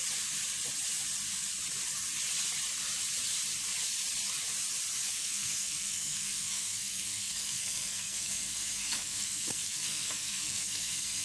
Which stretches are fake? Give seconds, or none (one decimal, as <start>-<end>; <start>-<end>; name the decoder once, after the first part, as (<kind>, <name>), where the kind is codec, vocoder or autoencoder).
5.1-11.2 (codec, SNAC)